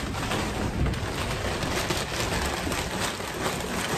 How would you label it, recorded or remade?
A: recorded